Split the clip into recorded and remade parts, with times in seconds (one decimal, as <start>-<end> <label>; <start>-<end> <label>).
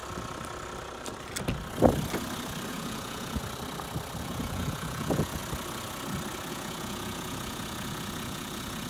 0.0-2.7 recorded; 2.7-3.4 remade; 3.4-4.2 recorded; 4.2-5.4 remade; 5.4-6.5 recorded; 6.5-8.9 remade